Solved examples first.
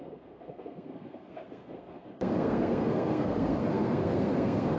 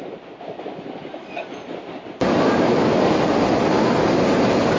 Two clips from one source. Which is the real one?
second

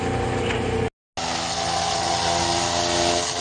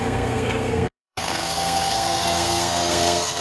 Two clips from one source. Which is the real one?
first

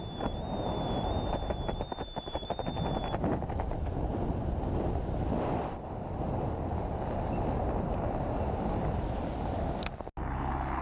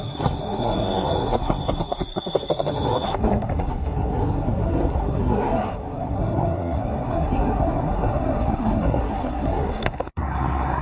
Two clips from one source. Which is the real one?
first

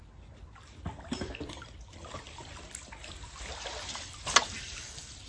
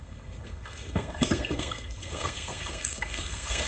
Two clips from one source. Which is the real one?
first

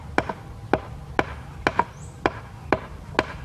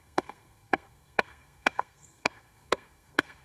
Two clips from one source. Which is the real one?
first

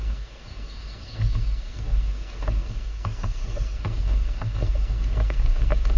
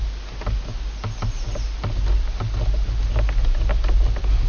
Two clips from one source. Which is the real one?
second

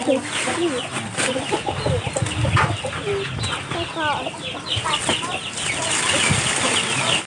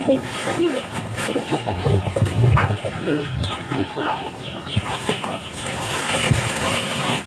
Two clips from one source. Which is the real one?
first